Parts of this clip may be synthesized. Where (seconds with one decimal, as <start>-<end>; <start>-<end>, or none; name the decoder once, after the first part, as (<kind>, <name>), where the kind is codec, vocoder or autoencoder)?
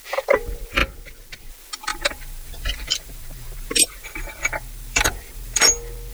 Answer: 1.9-5.6 (vocoder, BigVGAN v2)